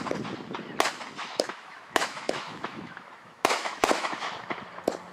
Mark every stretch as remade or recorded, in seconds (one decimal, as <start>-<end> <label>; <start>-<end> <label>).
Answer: 0.0-1.2 recorded; 1.2-4.3 remade; 4.3-5.1 recorded